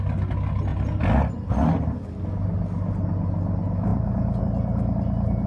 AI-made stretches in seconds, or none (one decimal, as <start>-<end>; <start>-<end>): 3.9-4.4